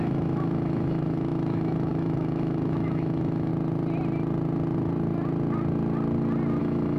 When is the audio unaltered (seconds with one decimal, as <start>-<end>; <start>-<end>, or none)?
3.5-6.6